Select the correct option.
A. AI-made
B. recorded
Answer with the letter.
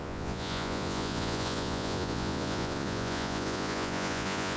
A